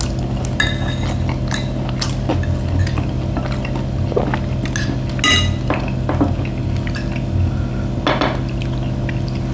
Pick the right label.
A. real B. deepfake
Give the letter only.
A